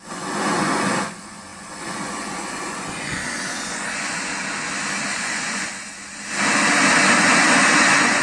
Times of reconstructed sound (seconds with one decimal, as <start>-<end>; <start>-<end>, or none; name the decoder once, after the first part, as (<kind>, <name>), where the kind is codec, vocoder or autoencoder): 0.0-4.3 (vocoder, Vocos); 5.1-5.7; 7.2-8.2